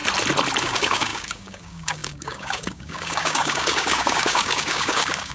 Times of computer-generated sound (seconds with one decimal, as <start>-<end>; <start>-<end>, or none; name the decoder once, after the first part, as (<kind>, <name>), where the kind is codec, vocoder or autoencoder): 0.6-5.3 (codec, DAC)